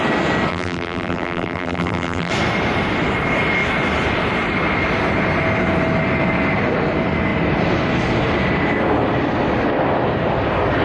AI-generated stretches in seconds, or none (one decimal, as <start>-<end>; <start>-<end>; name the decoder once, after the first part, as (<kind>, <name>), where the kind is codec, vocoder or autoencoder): 0.5-2.3 (vocoder, BigVGAN v2)